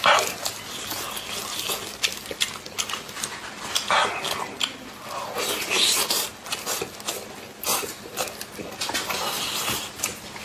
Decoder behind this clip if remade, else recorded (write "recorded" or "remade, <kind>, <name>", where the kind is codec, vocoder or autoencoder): recorded